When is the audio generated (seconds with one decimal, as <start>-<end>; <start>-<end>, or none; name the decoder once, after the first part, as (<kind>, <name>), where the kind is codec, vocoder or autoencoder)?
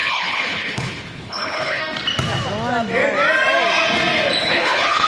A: 0.0-1.8 (codec, HILCodec); 4.4-5.1